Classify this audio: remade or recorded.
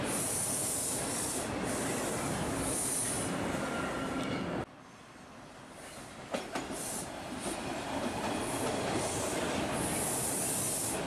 recorded